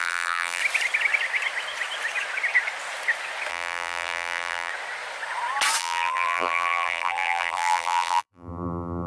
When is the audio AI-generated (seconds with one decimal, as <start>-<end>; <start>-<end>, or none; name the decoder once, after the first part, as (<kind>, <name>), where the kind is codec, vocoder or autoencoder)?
0.0-0.6 (vocoder, BigVGAN v2); 3.5-4.7; 5.8-9.1